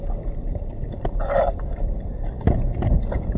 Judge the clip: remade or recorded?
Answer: recorded